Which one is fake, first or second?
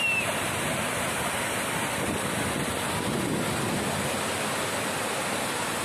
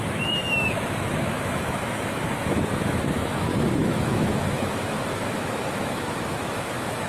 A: second